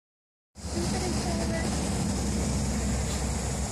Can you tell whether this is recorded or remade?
recorded